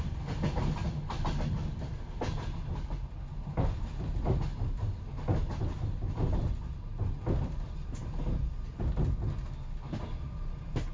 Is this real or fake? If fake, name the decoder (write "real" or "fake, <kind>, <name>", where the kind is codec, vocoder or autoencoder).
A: real